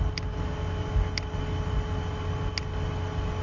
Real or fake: real